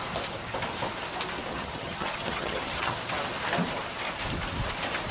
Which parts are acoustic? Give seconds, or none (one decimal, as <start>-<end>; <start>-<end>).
0.0-1.5; 3.0-5.1